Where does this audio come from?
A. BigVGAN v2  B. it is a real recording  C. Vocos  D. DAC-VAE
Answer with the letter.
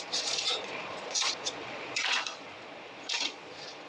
C